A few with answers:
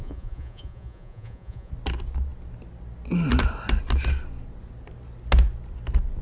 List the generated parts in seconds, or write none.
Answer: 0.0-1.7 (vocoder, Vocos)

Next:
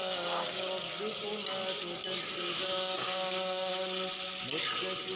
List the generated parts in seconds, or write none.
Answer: 0.0-0.7 (codec, DAC); 2.7-3.7

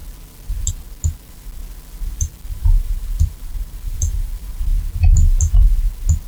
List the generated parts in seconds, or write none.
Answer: 0.7-1.6 (vocoder, BigVGAN v2); 2.2-4.7

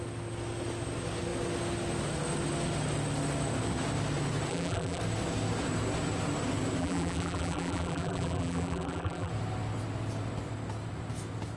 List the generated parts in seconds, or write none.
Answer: 4.5-5.0 (vocoder, BigVGAN v2); 6.8-9.3

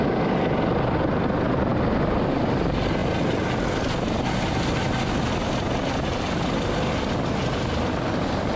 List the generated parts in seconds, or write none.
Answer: none

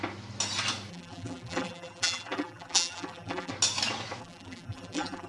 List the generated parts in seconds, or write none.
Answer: 0.9-3.5 (vocoder, BigVGAN v2); 4.2-5.3

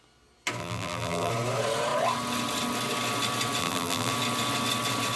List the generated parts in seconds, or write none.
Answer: 0.6-1.3 (vocoder, BigVGAN v2); 3.6-4.1